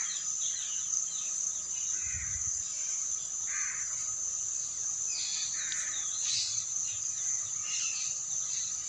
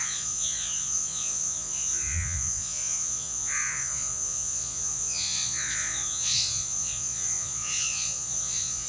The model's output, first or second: second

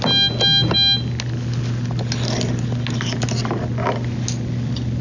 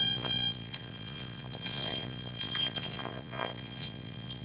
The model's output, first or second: second